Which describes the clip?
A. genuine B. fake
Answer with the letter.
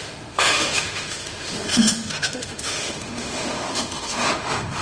B